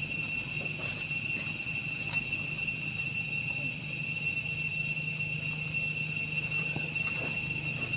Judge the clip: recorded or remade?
recorded